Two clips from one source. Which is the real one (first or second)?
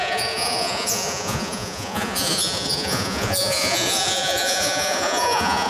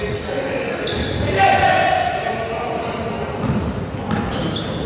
second